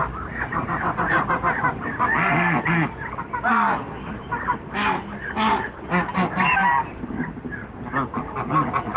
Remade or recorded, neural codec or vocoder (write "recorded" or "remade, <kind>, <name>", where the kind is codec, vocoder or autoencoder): recorded